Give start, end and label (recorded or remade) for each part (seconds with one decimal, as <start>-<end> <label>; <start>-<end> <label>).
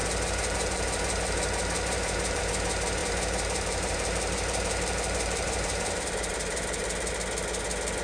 0.0-2.4 remade; 2.4-3.0 recorded; 3.0-7.1 remade; 7.1-8.0 recorded